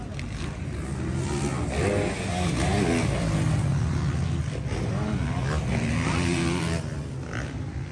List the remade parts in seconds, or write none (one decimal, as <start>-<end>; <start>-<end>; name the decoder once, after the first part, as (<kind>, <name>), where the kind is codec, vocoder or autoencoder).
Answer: none